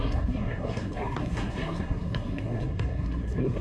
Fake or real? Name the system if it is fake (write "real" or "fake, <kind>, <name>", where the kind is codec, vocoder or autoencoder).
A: fake, codec, SNAC